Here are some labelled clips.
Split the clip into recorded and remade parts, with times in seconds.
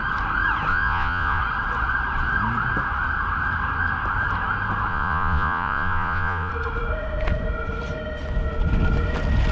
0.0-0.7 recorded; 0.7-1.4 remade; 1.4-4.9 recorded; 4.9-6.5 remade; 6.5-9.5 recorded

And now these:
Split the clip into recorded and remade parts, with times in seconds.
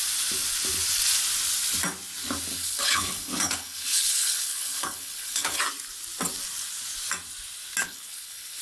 0.0-2.5 recorded; 2.5-5.6 remade; 5.6-7.8 recorded; 7.8-8.6 remade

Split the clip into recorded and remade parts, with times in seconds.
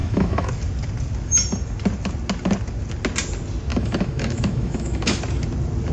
0.0-0.5 remade; 0.5-3.7 recorded; 3.7-5.2 remade; 5.2-5.9 recorded